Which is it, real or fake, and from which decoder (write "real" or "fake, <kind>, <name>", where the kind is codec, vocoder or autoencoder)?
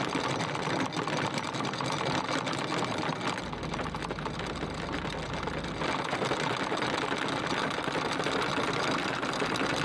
real